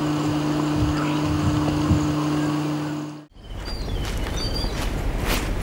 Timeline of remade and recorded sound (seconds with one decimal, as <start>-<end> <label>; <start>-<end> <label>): 0.0-3.4 recorded; 3.4-5.6 remade